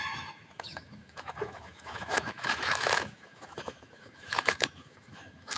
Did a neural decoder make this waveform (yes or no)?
yes